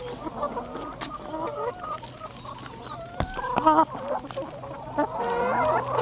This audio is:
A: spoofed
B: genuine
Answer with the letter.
B